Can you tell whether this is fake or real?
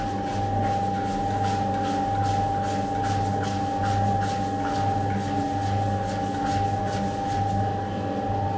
real